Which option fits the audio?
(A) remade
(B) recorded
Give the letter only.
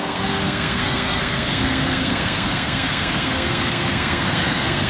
A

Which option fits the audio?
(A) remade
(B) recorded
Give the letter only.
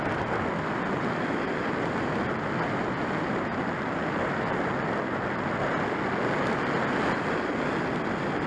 B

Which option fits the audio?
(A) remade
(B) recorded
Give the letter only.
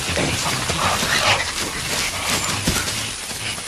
B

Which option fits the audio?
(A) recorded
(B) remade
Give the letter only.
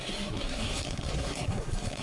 B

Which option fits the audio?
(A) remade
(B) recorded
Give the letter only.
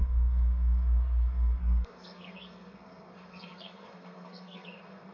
A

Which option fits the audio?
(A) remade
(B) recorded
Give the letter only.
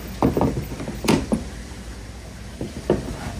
B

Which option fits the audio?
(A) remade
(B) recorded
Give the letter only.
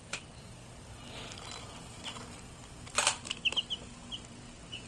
B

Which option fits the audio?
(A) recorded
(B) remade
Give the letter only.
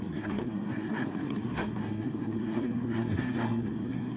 B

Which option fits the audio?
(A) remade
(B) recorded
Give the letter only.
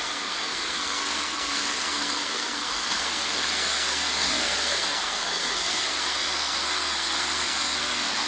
A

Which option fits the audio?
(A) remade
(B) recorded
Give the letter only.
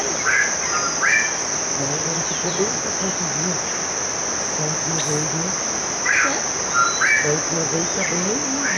B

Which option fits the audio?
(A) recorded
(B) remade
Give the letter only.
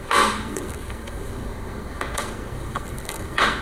B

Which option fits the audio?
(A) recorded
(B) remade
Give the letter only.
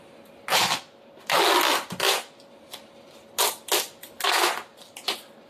A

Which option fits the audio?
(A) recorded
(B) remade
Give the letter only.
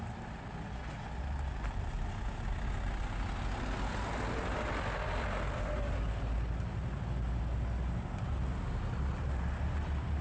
A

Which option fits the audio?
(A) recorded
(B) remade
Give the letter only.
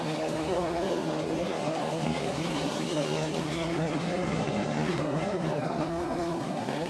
B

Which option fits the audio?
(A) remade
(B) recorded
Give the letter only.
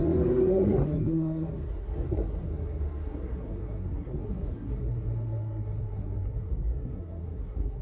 A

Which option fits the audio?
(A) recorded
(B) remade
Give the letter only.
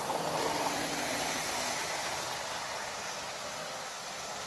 A